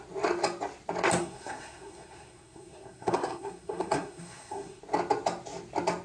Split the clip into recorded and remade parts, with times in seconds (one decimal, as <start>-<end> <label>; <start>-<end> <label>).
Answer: 0.0-1.2 recorded; 1.2-4.8 remade; 4.8-6.0 recorded